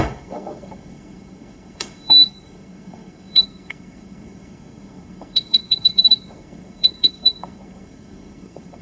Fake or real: fake